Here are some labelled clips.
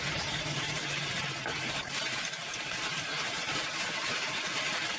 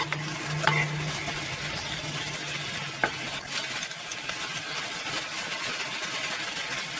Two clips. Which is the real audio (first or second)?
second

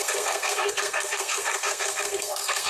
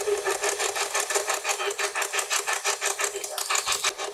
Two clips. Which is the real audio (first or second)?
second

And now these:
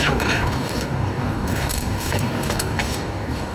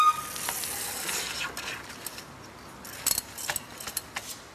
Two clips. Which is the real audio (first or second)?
second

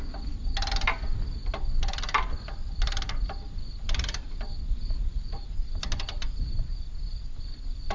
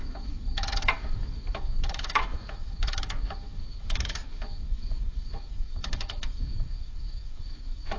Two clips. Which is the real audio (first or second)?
first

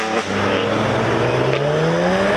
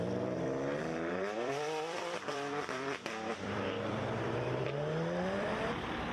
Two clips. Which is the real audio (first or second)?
first